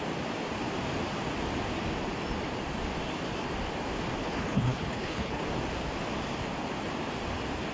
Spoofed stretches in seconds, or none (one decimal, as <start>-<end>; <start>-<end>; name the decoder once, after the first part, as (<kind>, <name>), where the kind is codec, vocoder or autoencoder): 4.2-5.4 (codec, HILCodec)